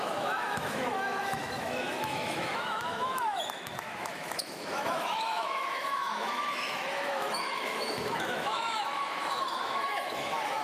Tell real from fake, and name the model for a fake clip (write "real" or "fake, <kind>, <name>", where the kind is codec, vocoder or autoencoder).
fake, autoencoder, DAC-VAE